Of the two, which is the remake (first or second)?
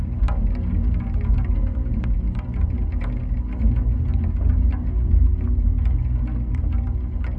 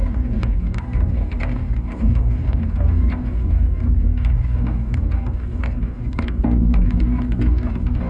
second